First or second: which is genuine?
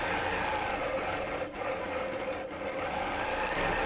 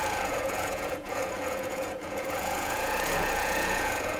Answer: first